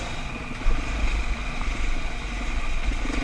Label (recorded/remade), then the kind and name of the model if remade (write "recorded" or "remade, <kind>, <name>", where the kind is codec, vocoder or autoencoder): recorded